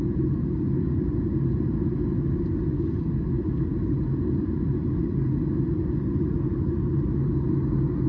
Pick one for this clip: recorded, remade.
recorded